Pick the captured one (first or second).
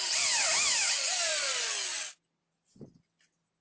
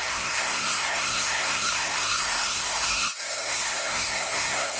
first